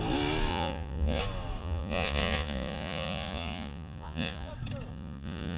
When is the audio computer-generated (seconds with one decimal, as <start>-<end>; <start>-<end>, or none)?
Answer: 0.5-1.2; 1.6-4.5; 4.9-5.6